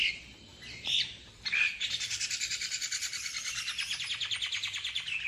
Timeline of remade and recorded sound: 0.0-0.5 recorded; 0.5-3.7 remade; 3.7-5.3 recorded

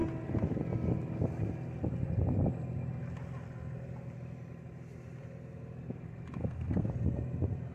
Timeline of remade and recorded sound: 0.0-6.4 recorded; 6.4-6.9 remade; 6.9-7.7 recorded

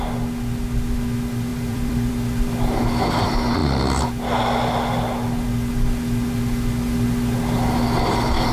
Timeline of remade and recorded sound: 0.0-1.5 recorded; 1.5-2.1 remade; 2.1-8.5 recorded